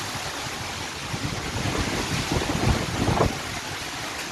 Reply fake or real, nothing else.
real